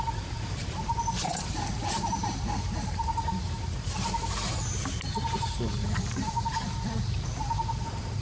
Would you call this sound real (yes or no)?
no